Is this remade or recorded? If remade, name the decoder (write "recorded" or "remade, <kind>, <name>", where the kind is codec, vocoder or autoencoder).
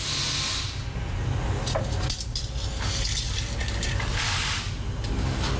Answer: recorded